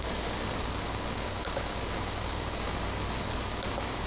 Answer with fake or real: fake